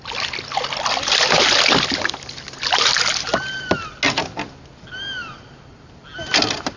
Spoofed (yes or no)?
no